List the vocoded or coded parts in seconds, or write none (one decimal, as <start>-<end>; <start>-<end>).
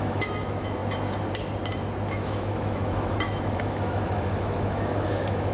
0.0-0.8; 2.1-5.5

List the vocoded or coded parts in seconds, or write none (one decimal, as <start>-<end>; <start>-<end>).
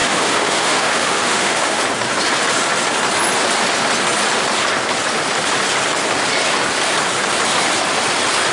0.0-1.8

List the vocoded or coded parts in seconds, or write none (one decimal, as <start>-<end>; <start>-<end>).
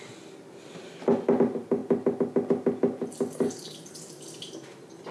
none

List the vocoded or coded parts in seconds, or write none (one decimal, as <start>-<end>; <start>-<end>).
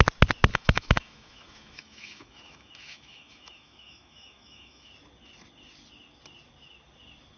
0.5-4.9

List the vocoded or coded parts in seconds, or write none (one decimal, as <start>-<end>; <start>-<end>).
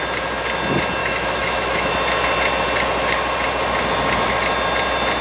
1.0-1.9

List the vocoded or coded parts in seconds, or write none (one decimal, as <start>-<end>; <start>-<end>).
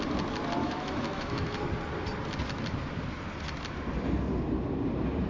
0.6-1.6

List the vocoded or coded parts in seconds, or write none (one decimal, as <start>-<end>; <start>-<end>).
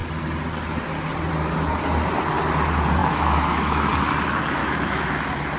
3.0-3.9; 4.6-5.1